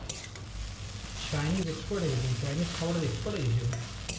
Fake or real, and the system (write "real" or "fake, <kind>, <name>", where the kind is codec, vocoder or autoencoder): real